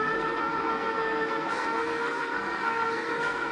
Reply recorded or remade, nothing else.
remade